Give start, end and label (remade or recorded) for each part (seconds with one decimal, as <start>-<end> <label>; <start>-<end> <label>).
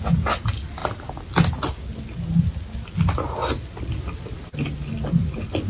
0.0-5.7 recorded